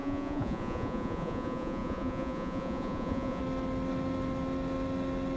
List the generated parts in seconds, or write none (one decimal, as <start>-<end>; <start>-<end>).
0.0-3.4